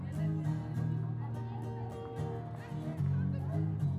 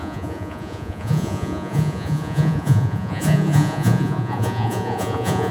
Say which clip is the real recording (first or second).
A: first